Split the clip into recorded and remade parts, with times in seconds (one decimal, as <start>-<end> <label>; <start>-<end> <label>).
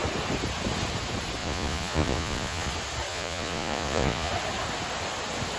0.0-1.4 recorded; 1.4-2.7 remade; 2.7-3.1 recorded; 3.1-4.3 remade; 4.3-5.6 recorded